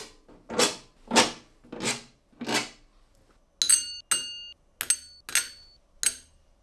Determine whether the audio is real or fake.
real